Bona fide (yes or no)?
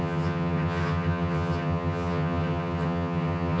no